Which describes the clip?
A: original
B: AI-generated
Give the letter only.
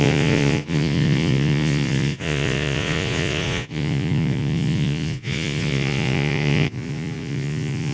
B